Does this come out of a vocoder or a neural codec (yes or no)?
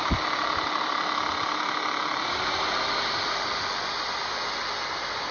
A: no